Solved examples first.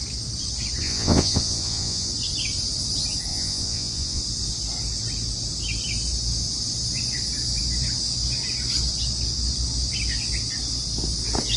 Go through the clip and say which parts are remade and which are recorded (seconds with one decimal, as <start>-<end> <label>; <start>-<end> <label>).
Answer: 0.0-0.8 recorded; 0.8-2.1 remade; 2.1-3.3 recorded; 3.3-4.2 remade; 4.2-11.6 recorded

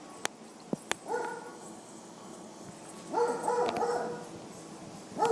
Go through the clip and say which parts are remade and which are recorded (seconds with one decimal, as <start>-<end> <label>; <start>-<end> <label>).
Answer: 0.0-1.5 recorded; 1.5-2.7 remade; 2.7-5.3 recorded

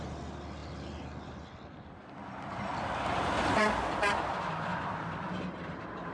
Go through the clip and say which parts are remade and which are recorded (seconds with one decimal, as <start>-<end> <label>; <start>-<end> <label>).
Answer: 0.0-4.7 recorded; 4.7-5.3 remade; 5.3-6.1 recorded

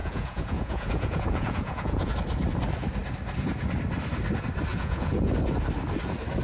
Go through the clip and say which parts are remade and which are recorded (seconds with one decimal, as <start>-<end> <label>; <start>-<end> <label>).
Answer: 0.0-2.1 remade; 2.1-4.7 recorded; 4.7-5.3 remade; 5.3-6.4 recorded